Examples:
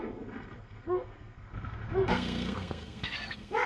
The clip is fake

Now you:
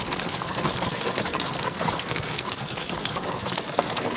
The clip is fake